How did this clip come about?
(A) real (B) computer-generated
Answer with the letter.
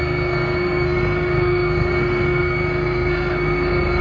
B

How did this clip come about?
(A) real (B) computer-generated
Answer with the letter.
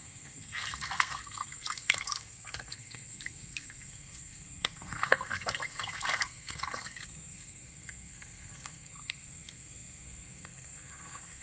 B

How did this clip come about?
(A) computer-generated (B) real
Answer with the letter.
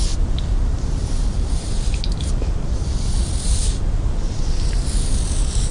B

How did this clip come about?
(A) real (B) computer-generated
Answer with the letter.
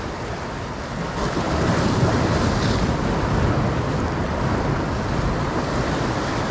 A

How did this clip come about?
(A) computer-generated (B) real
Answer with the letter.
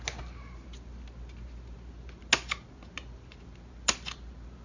B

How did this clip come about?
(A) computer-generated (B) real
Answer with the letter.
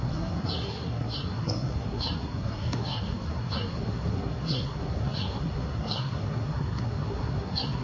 A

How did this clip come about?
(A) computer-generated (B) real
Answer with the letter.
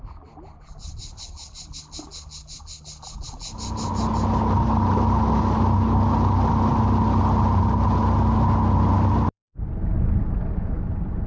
B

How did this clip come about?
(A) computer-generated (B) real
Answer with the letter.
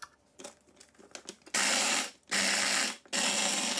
B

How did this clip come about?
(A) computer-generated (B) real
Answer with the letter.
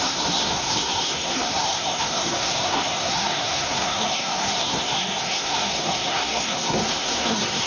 A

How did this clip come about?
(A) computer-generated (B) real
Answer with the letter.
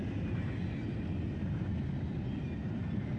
B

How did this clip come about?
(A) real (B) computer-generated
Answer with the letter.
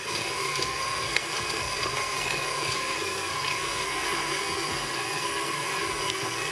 B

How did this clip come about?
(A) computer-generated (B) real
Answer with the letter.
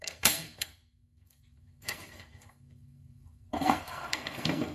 A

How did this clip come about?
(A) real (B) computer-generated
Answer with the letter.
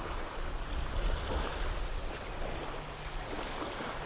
A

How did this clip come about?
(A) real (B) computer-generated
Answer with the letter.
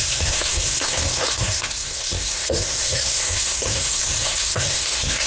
B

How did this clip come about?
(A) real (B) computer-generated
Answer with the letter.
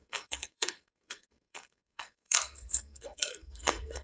B